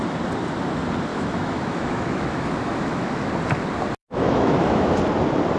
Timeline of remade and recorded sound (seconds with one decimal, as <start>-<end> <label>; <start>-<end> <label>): 0.0-1.1 recorded; 1.1-3.3 remade; 3.3-4.0 recorded; 4.0-4.9 remade; 4.9-5.6 recorded